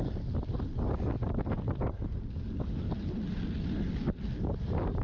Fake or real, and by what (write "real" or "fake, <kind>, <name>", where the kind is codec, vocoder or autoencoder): real